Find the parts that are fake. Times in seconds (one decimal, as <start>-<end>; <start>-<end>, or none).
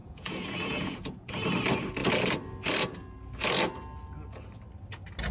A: 0.0-1.3